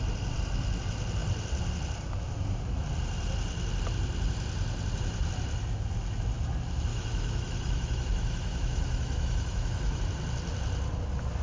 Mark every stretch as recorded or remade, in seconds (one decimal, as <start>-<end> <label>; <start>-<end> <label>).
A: 0.0-6.9 recorded; 6.9-10.0 remade; 10.0-11.4 recorded